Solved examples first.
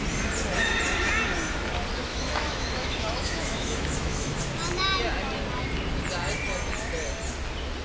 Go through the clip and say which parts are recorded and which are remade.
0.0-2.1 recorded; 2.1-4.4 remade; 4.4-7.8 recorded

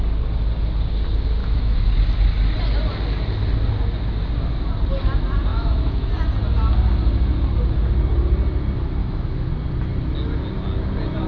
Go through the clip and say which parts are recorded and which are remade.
0.0-1.4 recorded; 1.4-1.9 remade; 1.9-5.5 recorded; 5.5-6.1 remade; 6.1-9.0 recorded; 9.0-9.5 remade; 9.5-11.3 recorded

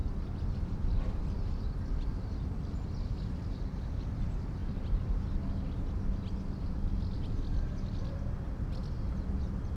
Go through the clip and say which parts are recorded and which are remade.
0.0-9.8 recorded

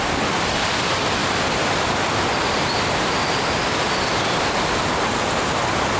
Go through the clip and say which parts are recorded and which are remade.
0.0-6.0 recorded

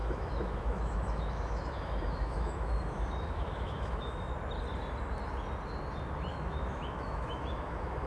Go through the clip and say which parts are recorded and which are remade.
0.0-4.3 remade; 4.3-6.3 recorded; 6.3-8.1 remade

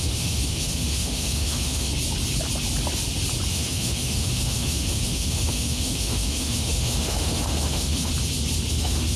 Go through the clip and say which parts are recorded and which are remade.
0.0-1.9 remade; 1.9-3.5 recorded; 3.5-8.1 remade; 8.1-8.7 recorded; 8.7-9.2 remade